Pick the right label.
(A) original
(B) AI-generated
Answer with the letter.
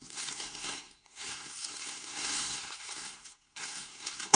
B